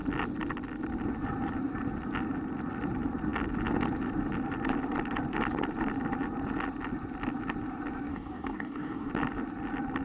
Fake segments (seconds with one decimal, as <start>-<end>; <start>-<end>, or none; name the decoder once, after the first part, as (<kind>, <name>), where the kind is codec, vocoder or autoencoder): 8.1-9.1 (codec, DAC)